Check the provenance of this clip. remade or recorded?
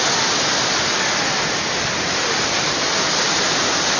recorded